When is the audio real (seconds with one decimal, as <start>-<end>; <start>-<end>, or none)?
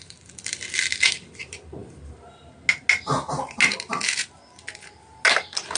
1.8-5.3